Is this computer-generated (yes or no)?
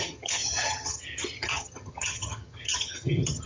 yes